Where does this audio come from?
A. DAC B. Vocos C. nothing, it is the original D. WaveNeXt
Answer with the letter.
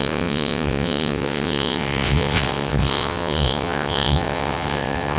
D